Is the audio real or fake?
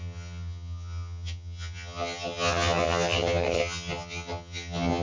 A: fake